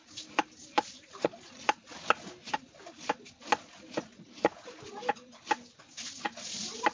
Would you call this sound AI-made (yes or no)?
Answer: no